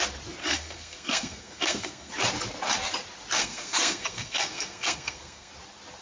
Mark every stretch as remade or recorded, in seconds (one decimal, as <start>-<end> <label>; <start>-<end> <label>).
0.0-0.4 recorded; 0.4-2.1 remade; 2.1-3.4 recorded; 3.4-5.5 remade; 5.5-6.0 recorded